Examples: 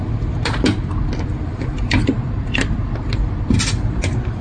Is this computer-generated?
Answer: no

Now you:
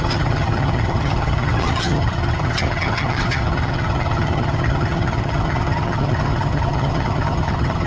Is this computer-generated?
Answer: yes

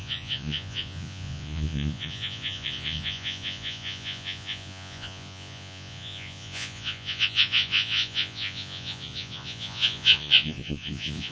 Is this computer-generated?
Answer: yes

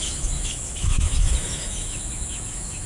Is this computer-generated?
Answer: yes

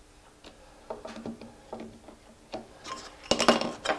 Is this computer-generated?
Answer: no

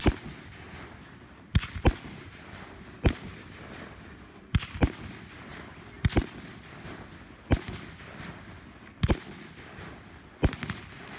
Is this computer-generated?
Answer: no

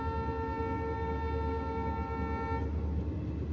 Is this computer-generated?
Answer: no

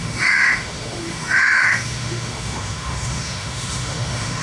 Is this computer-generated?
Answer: yes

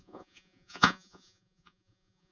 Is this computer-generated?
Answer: yes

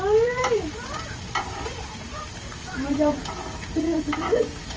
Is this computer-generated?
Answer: yes